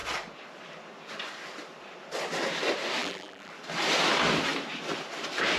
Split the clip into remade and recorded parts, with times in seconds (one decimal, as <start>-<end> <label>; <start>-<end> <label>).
0.0-3.0 recorded; 3.0-3.5 remade; 3.5-5.6 recorded